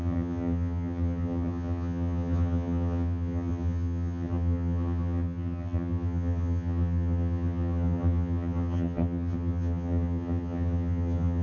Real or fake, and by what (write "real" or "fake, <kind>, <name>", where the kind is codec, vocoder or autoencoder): fake, vocoder, HiFi-GAN